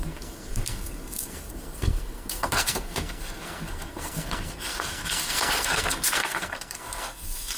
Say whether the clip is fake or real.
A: fake